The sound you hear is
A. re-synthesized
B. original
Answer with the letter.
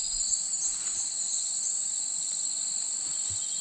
B